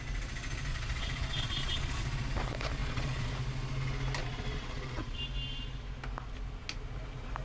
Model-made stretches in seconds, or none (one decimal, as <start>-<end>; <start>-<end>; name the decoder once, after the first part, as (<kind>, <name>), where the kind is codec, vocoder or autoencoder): 0.7-2.0 (vocoder, Vocos); 2.8-3.3; 4.2-5.2